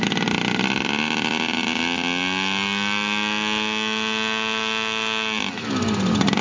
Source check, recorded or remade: recorded